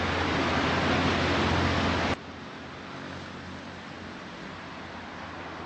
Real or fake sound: real